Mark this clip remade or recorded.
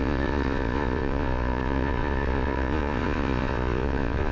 remade